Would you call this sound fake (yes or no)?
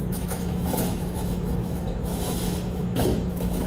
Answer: yes